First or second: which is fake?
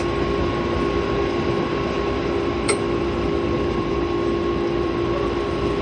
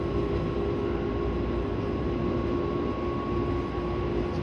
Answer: first